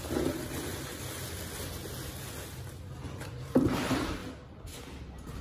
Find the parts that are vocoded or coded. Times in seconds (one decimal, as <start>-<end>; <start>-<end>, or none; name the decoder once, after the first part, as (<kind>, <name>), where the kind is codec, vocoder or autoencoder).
0.0-0.7 (vocoder, BigVGAN v2); 3.2-4.2; 5.0-5.4